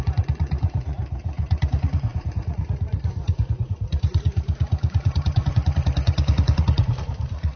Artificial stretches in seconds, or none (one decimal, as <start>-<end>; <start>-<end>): 0.0-7.6